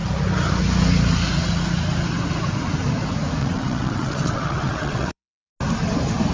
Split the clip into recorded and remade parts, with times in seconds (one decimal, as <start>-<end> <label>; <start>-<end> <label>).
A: 0.0-3.4 recorded; 3.4-5.5 remade; 5.5-6.3 recorded